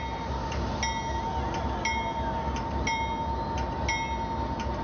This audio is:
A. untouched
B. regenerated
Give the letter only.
A